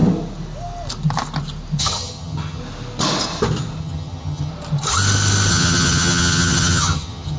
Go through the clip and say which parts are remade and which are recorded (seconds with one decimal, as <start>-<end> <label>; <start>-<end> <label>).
0.0-1.8 recorded; 1.8-2.6 remade; 2.6-3.8 recorded; 3.8-4.5 remade; 4.5-5.5 recorded; 5.5-7.4 remade